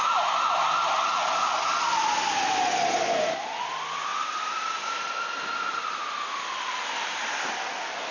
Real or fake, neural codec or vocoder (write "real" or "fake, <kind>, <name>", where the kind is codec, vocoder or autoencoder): real